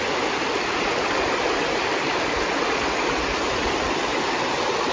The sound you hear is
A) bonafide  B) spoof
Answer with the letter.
A